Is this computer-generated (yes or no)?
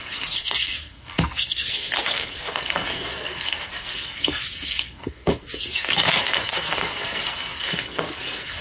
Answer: yes